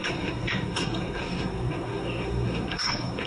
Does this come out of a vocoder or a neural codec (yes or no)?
yes